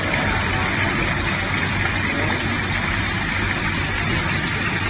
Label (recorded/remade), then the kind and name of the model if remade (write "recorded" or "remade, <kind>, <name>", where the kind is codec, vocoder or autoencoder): recorded